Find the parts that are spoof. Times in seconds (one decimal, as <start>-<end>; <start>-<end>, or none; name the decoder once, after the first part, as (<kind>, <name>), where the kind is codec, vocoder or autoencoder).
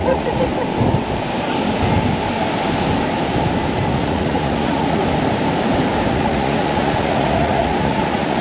0.0-0.5 (vocoder, Vocos); 3.9-5.0; 6.1-8.4